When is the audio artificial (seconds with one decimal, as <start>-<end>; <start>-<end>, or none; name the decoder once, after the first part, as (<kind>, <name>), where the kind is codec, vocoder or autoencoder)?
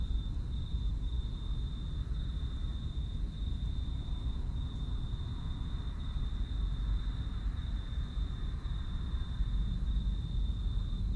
none